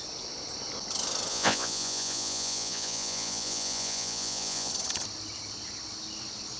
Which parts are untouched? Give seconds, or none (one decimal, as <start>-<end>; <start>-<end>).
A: 0.0-1.3; 4.7-6.6